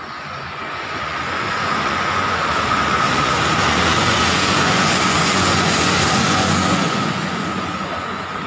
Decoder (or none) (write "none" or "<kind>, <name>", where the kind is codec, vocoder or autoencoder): vocoder, Vocos